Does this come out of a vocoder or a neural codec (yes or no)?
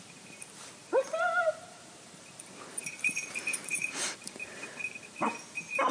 yes